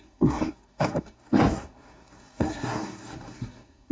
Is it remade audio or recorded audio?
remade